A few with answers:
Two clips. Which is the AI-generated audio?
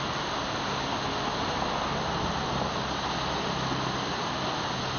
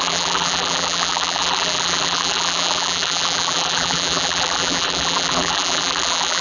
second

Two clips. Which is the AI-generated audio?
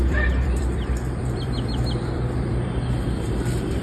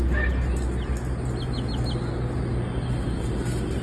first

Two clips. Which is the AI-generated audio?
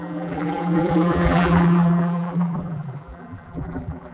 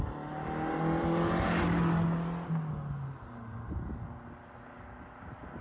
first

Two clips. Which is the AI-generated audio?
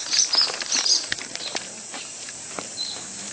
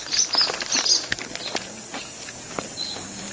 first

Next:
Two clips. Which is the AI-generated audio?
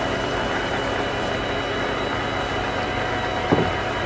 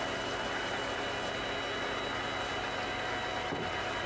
first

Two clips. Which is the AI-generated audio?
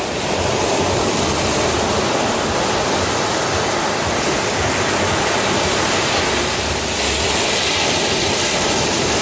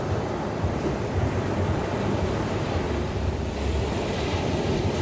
second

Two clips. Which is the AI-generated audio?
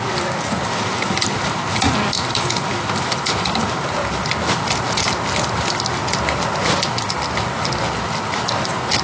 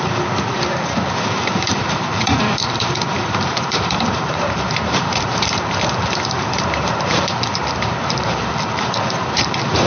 second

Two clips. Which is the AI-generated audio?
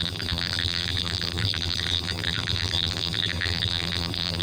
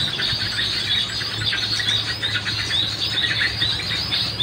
first